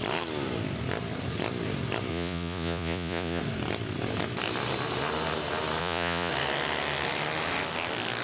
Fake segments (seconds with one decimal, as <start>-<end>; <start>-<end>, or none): 2.1-3.4; 5.8-6.3